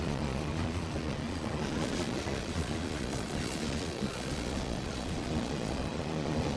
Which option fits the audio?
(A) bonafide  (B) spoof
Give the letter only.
B